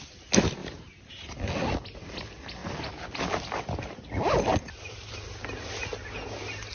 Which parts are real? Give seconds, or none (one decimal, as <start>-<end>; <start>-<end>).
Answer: 0.0-0.6; 1.5-4.5; 5.1-6.7